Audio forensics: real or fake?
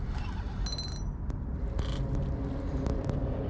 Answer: real